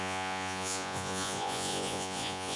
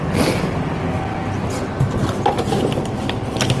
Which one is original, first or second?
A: second